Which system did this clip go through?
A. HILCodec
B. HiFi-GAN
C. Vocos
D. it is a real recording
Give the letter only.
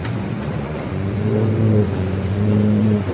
C